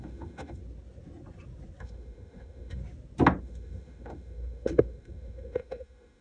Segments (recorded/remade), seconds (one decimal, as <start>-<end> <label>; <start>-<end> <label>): 0.0-0.6 remade; 0.6-1.8 recorded; 1.8-2.8 remade; 2.8-3.4 recorded; 3.4-6.2 remade